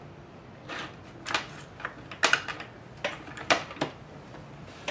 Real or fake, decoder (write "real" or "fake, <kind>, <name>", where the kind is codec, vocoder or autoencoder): real